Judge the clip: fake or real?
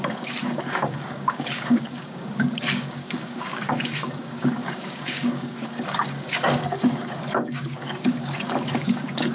fake